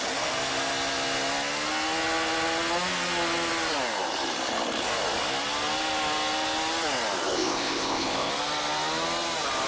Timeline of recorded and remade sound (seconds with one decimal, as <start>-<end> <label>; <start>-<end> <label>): 0.0-7.3 recorded; 7.3-8.3 remade; 8.3-9.7 recorded